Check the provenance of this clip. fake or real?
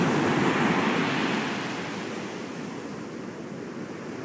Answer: real